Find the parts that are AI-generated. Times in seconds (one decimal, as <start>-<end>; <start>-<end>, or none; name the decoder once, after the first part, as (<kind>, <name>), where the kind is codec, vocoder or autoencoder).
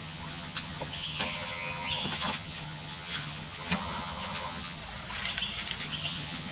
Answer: 0.0-4.8 (vocoder, HiFi-GAN); 5.8-6.5